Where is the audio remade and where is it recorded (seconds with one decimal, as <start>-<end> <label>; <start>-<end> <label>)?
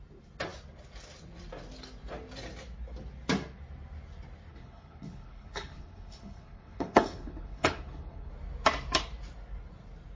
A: 0.0-4.5 recorded; 4.5-8.3 remade; 8.3-10.2 recorded